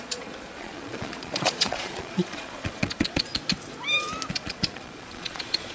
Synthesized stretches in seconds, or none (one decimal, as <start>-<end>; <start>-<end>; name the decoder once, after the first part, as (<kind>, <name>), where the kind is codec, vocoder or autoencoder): 0.0-3.3 (vocoder, Vocos); 4.3-5.7